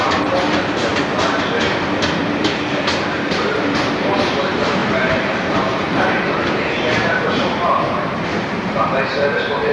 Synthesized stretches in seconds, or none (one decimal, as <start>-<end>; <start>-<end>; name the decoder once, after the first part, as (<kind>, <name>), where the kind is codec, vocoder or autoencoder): 0.0-0.9 (vocoder, BigVGAN v2); 2.2-9.7